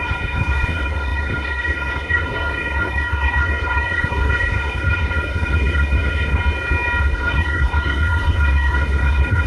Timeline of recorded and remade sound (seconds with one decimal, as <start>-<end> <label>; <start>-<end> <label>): 0.0-6.4 remade; 6.4-7.0 recorded; 7.0-9.5 remade